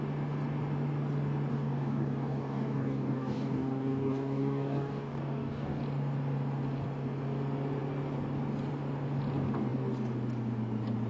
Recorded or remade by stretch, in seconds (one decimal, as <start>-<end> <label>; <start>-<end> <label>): 0.0-1.5 recorded; 1.5-5.8 remade; 5.8-11.1 recorded